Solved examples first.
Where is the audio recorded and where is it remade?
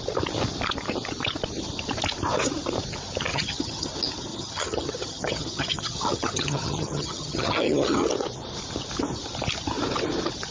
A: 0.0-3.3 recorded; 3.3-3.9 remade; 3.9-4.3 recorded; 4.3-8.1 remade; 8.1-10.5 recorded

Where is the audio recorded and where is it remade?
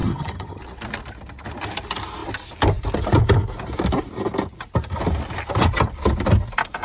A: 0.0-0.6 remade; 0.6-6.8 recorded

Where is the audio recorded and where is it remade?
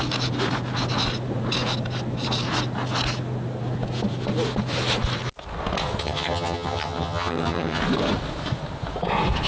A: 0.0-6.0 recorded; 6.0-7.8 remade; 7.8-9.5 recorded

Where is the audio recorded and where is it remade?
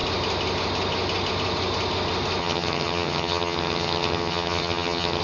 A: 0.0-2.4 recorded; 2.4-5.2 remade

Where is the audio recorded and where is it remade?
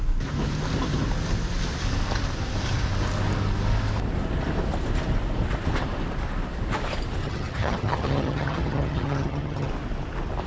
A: 0.0-7.2 recorded; 7.2-9.7 remade; 9.7-10.5 recorded